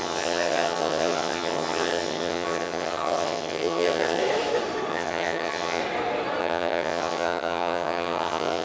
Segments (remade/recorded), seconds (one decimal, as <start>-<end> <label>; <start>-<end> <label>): 0.0-4.2 remade; 4.2-4.9 recorded; 4.9-5.8 remade; 5.8-6.4 recorded; 6.4-8.6 remade